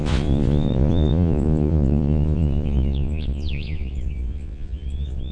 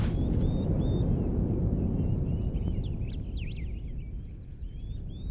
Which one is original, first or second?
second